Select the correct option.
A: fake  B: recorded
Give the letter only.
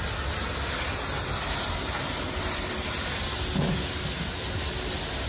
B